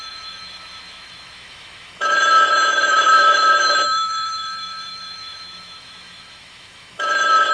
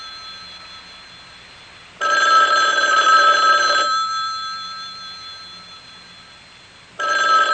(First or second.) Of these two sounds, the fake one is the first